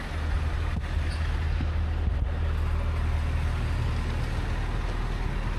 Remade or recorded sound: recorded